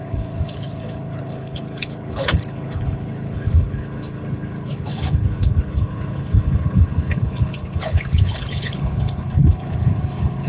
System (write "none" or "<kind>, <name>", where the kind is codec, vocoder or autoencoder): codec, HILCodec